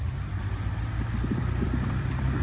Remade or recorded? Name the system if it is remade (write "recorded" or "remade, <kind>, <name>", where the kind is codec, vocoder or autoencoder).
remade, vocoder, BigVGAN v2